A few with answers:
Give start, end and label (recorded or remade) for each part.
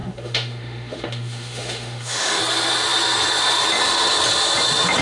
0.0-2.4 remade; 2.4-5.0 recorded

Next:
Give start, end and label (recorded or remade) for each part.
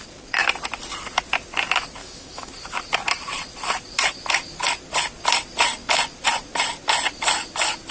0.0-2.0 recorded; 2.0-2.5 remade; 2.5-7.9 recorded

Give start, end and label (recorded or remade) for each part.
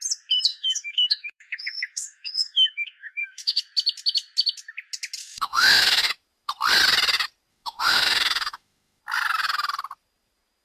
0.0-0.5 recorded; 0.5-3.6 remade; 3.6-5.2 recorded; 5.2-6.1 remade; 6.1-7.5 recorded; 7.5-9.0 remade; 9.0-10.6 recorded